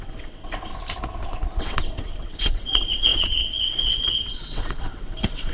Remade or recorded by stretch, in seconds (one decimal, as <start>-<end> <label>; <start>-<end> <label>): 0.0-0.7 remade; 0.7-1.6 recorded; 1.6-5.5 remade